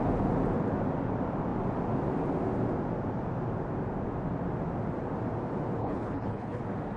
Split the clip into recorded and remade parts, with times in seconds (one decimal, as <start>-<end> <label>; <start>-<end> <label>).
0.0-5.8 recorded; 5.8-6.6 remade; 6.6-7.0 recorded